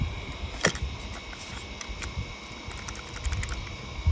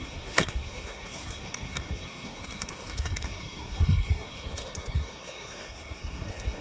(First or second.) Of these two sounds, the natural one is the first